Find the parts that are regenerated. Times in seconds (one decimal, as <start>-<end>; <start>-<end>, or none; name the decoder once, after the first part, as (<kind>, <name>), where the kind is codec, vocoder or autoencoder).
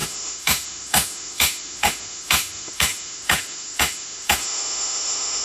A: 0.0-5.4 (autoencoder, DAC-VAE)